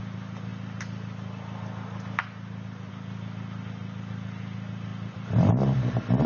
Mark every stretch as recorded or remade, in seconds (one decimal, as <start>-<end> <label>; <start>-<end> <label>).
0.0-6.3 recorded